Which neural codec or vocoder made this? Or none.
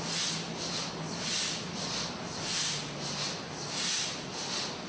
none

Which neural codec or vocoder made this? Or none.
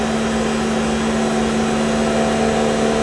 none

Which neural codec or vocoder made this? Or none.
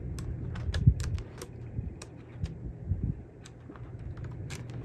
none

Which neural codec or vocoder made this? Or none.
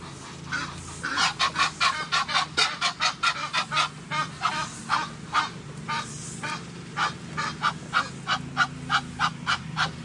none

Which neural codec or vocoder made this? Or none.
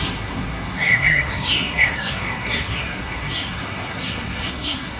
codec, SNAC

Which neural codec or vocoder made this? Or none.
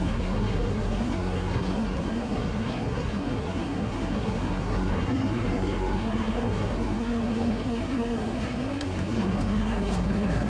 codec, SNAC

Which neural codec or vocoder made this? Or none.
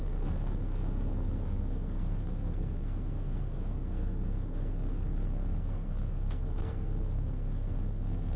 codec, SNAC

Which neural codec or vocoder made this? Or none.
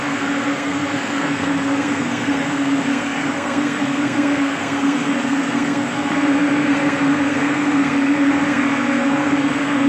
codec, SNAC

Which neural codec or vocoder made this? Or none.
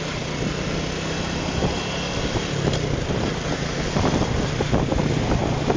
none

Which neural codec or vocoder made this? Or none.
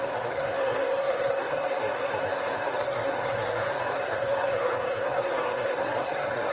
codec, SNAC